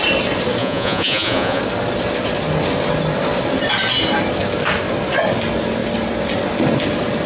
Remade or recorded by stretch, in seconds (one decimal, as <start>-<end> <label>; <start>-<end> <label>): 0.0-0.6 recorded; 0.6-1.6 remade; 1.6-7.3 recorded